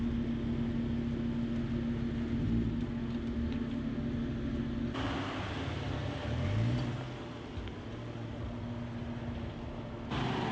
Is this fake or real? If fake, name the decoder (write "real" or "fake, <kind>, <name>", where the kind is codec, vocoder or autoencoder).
real